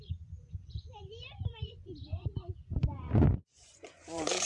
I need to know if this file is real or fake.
fake